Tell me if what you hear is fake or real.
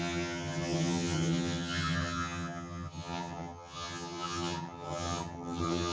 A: fake